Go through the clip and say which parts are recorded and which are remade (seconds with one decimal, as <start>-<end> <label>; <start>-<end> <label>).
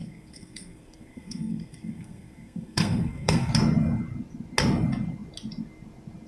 0.0-3.5 remade; 3.5-6.3 recorded